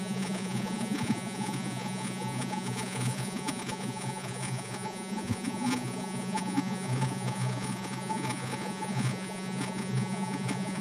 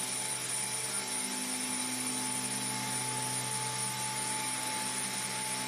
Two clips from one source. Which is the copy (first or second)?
first